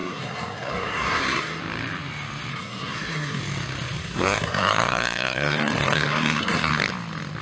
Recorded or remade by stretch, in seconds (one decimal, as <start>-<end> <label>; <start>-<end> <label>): 0.0-1.6 remade; 1.6-2.5 recorded; 2.5-3.4 remade; 3.4-4.0 recorded; 4.0-6.7 remade; 6.7-7.4 recorded